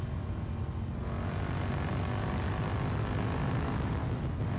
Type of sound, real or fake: real